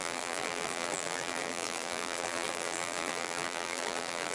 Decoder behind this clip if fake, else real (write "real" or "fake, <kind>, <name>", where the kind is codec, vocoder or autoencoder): fake, vocoder, BigVGAN v2